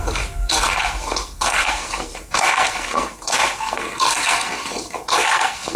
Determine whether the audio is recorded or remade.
remade